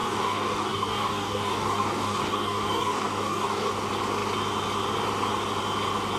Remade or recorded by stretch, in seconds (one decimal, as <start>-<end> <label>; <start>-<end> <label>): 0.0-3.7 remade; 3.7-6.2 recorded